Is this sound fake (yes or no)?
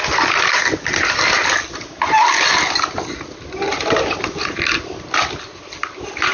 no